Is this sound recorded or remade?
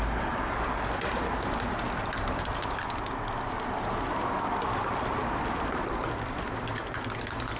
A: remade